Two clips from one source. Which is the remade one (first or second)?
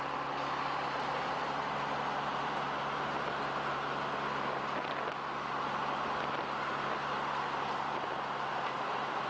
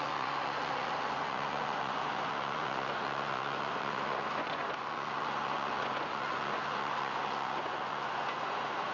second